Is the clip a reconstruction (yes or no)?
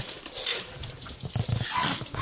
no